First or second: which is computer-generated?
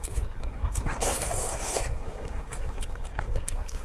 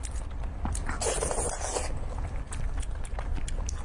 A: first